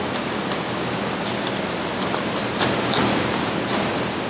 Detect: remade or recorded recorded